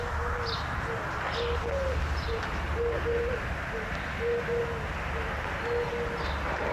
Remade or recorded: recorded